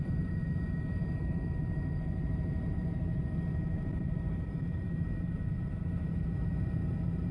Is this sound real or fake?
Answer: fake